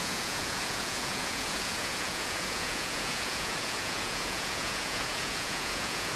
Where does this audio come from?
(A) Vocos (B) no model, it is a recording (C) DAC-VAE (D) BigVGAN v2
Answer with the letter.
A